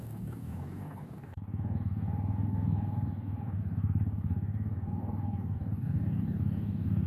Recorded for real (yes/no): no